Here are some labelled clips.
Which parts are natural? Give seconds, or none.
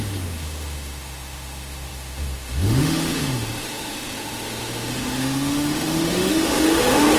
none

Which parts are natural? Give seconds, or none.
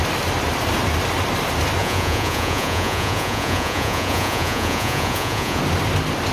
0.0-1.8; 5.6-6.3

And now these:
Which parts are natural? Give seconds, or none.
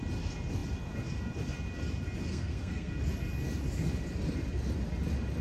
0.0-2.3; 2.9-5.4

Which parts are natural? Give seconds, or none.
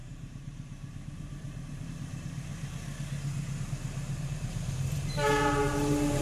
2.5-4.1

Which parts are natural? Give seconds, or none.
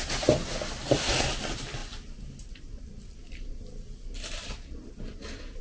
0.0-5.6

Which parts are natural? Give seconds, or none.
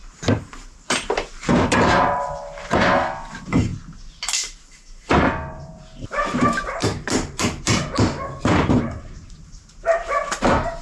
3.7-5.5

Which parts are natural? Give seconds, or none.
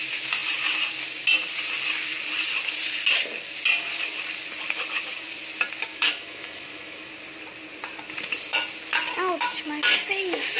0.0-5.9; 7.1-10.6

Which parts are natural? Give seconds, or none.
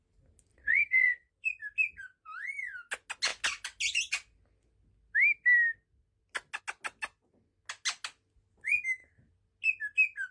0.0-0.5; 1.3-10.3